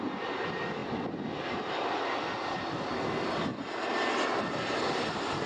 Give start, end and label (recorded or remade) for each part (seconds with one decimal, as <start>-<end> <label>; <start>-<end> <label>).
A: 0.0-5.5 recorded